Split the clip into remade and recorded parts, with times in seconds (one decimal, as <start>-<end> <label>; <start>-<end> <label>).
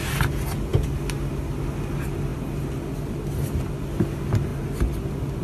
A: 0.0-5.4 recorded